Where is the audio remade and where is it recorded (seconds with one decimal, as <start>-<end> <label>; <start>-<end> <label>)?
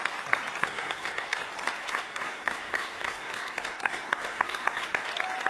0.0-0.6 recorded; 0.6-1.4 remade; 1.4-1.8 recorded; 1.8-5.1 remade; 5.1-5.5 recorded